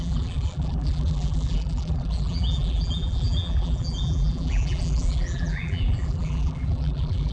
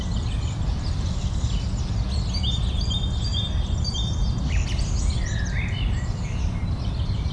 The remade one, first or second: first